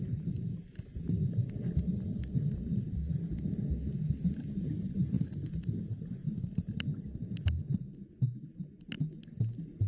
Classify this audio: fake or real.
real